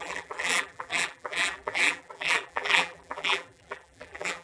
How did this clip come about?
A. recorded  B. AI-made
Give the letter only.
B